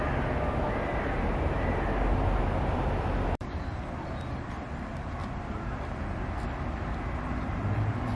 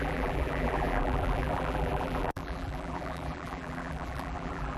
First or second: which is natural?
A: first